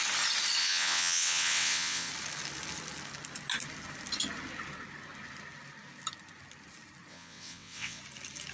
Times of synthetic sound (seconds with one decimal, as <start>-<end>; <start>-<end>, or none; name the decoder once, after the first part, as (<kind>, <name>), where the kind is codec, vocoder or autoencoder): 0.6-2.1 (vocoder, WaveNeXt); 7.1-8.0